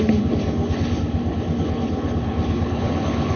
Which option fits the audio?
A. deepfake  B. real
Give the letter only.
A